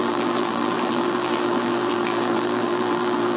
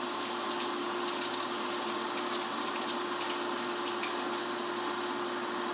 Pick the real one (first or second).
second